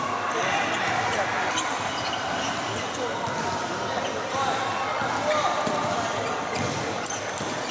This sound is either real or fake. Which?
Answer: real